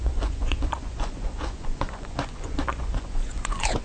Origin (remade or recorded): remade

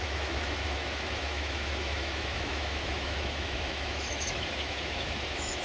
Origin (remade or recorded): remade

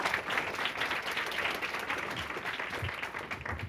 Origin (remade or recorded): recorded